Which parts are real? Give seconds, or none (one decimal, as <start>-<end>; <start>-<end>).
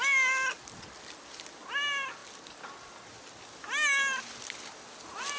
0.0-5.4